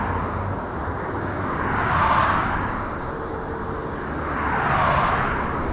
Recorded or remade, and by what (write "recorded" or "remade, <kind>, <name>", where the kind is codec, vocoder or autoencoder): recorded